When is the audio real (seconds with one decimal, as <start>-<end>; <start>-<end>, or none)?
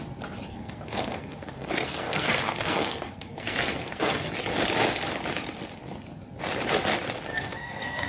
0.0-0.5; 4.3-7.3